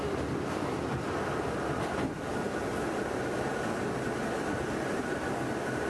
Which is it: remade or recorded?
recorded